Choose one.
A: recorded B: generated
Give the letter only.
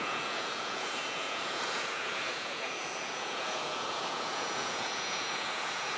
B